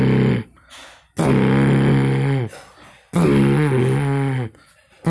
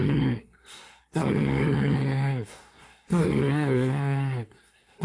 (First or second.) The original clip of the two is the first